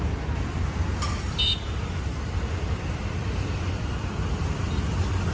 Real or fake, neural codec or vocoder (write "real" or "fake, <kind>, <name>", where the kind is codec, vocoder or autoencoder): real